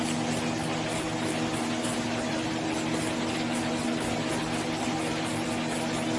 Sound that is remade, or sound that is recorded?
recorded